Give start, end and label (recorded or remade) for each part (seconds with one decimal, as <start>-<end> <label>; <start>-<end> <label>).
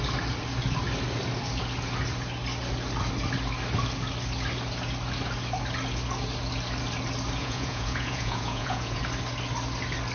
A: 0.0-7.4 recorded; 7.4-9.0 remade; 9.0-10.1 recorded